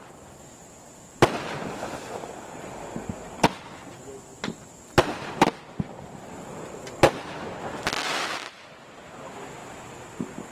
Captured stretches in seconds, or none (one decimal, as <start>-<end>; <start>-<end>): 0.0-10.5